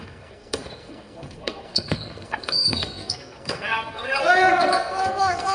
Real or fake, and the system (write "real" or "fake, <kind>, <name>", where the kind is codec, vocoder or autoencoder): fake, codec, SNAC